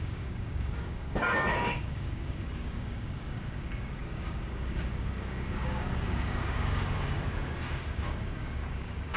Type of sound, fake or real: fake